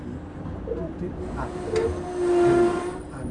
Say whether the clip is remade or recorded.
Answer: recorded